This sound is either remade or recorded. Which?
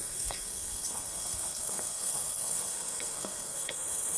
remade